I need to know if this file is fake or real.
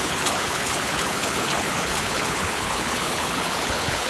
fake